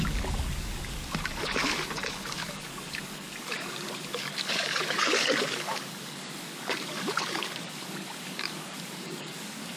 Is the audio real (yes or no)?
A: no